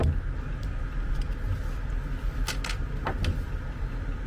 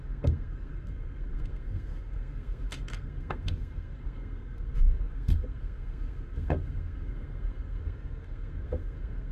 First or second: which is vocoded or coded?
second